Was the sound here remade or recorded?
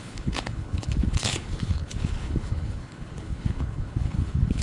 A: remade